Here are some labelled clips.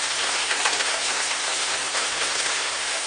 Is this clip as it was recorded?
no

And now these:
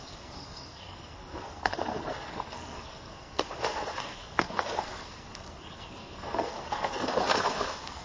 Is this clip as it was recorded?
no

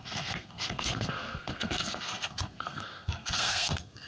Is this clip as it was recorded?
no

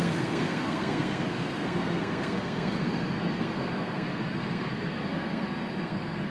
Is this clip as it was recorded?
no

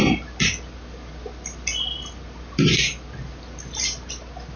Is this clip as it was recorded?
yes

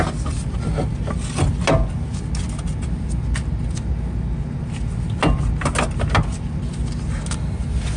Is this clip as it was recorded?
yes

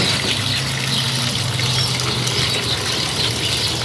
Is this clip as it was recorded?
yes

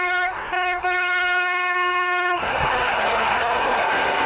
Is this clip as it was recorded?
no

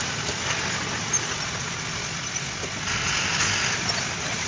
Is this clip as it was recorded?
yes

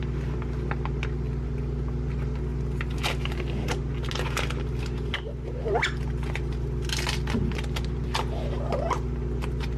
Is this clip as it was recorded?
yes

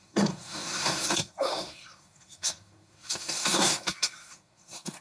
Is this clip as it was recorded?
no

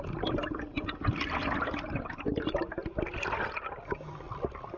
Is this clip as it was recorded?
yes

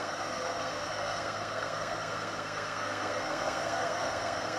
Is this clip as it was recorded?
no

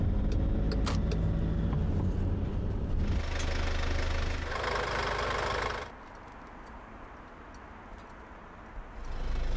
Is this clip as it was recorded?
yes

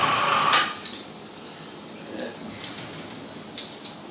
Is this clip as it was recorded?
yes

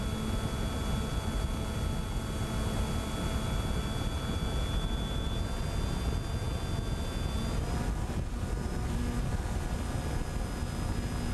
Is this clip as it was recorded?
yes